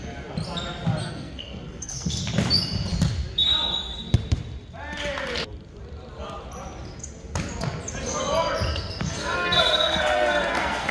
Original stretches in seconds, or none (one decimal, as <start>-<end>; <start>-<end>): 0.0-1.0; 2.2-8.7